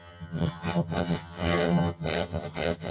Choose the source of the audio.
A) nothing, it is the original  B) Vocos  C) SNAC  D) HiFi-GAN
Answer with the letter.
D